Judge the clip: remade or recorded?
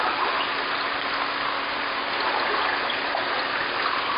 recorded